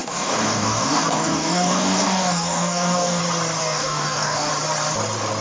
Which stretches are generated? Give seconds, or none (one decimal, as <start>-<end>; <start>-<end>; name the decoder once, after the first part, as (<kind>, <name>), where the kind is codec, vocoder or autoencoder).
0.0-3.2 (codec, DAC); 3.6-4.5